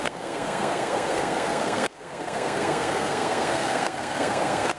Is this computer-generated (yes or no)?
yes